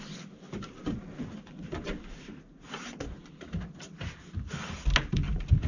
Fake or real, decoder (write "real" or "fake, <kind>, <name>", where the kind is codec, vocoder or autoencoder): real